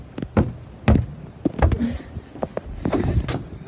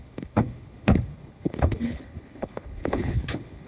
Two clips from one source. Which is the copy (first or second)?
second